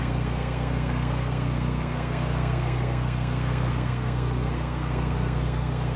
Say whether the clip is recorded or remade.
remade